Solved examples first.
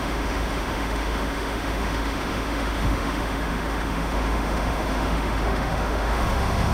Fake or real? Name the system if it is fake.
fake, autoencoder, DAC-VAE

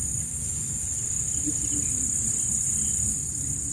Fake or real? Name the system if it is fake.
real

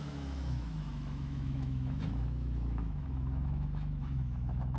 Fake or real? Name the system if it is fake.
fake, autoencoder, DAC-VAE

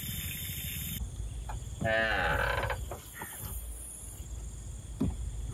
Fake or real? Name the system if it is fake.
real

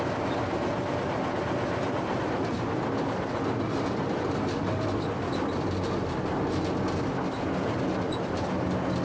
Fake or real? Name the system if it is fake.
real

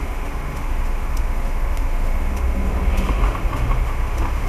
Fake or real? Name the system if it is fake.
fake, autoencoder, DAC-VAE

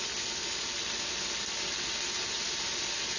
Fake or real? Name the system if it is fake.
real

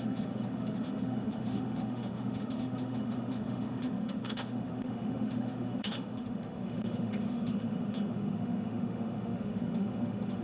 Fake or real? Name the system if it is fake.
fake, autoencoder, DAC-VAE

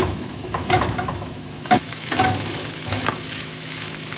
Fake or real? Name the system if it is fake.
fake, autoencoder, DAC-VAE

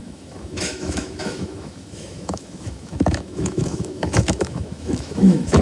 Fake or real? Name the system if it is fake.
fake, autoencoder, DAC-VAE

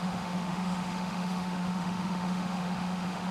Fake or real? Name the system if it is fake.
fake, autoencoder, DAC-VAE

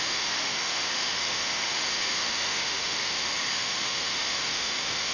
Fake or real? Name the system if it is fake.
fake, autoencoder, DAC-VAE